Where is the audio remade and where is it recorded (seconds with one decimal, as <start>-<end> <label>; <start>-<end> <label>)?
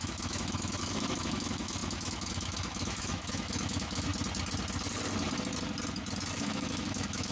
0.0-4.1 remade; 4.1-6.3 recorded; 6.3-7.3 remade